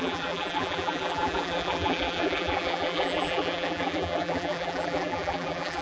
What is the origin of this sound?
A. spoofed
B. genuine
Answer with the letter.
A